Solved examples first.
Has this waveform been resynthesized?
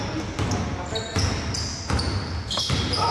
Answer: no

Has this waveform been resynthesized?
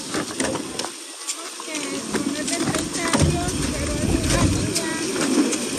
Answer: no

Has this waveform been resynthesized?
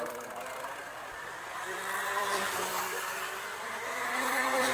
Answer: yes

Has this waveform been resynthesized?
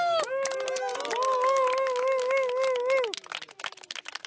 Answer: no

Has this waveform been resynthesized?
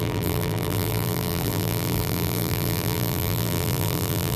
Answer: yes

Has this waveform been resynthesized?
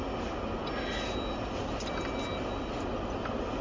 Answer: no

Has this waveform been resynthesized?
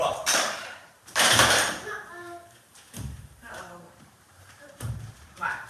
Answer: yes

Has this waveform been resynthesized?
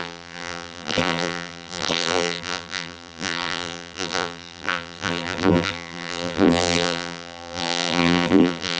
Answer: yes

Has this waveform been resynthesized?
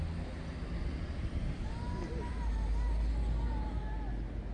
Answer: no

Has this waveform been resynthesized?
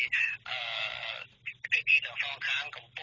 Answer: no